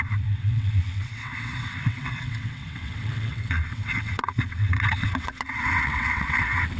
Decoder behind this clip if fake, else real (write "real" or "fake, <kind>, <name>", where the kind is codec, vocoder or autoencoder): fake, vocoder, WaveNeXt